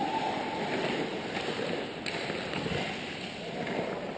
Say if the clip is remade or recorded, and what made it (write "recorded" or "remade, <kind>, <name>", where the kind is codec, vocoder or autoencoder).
recorded